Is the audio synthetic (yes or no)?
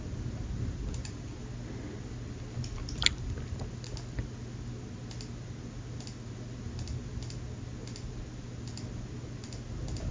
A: no